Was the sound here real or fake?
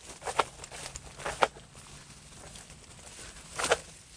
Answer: real